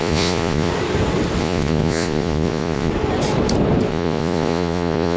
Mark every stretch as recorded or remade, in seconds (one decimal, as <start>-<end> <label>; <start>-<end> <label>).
0.0-0.7 remade; 0.7-1.4 recorded; 1.4-2.9 remade; 2.9-3.9 recorded; 3.9-5.2 remade